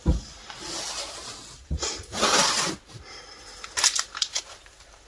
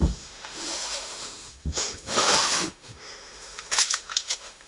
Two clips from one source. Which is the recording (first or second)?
first